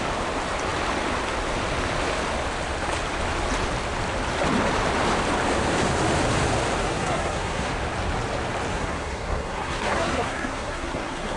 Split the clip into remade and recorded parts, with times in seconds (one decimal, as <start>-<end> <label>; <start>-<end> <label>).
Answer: 0.0-6.8 recorded; 6.8-7.7 remade; 7.7-8.7 recorded; 8.7-11.4 remade